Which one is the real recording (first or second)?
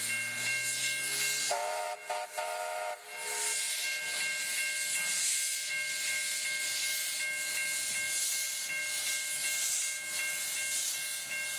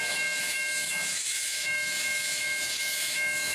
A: first